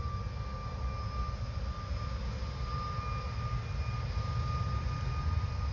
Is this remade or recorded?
recorded